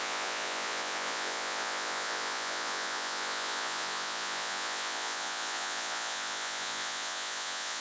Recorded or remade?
remade